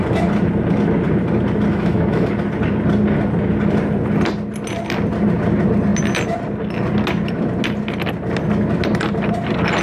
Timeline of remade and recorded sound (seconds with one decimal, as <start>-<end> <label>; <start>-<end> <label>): 0.0-1.7 recorded; 1.7-2.3 remade; 2.3-9.8 recorded